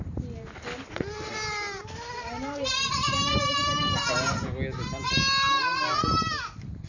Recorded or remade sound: recorded